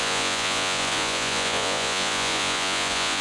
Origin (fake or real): fake